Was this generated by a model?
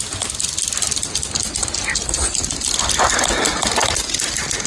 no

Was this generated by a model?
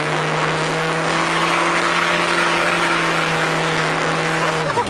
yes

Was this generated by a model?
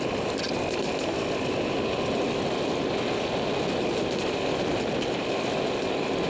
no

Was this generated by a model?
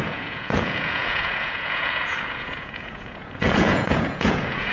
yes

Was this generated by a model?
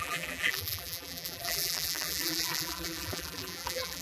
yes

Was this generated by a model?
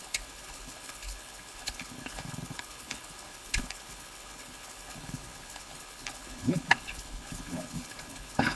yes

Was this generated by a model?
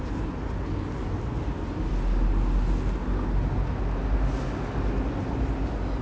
no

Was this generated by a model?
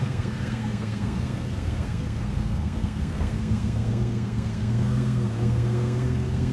yes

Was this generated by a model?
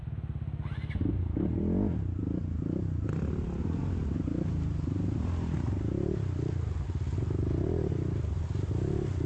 no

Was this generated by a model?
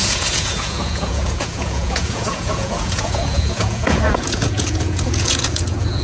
yes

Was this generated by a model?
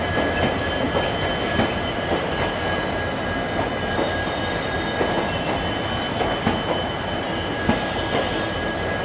no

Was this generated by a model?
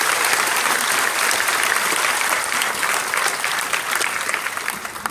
yes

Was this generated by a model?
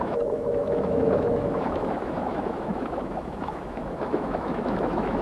yes